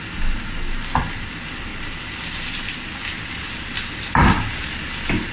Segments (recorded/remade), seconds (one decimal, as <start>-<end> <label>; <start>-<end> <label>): 0.0-5.3 recorded